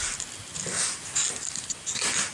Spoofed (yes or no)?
no